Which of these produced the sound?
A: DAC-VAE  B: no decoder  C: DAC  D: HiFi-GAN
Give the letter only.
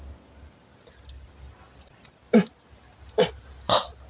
B